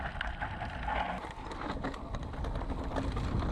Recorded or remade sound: recorded